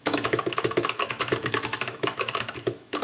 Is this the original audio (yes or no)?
no